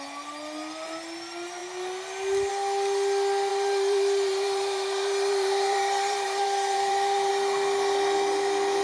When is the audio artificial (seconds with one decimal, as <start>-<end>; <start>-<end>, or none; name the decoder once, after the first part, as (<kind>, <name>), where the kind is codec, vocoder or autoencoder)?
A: 3.5-7.3 (vocoder, BigVGAN v2)